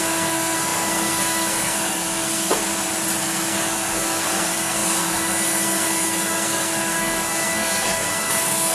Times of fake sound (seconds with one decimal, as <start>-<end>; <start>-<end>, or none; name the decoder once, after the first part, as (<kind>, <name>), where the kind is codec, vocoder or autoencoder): 0.0-2.6 (codec, SNAC); 3.2-8.7